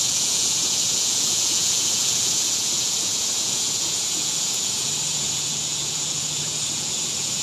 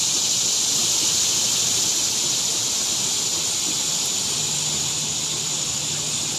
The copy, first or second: first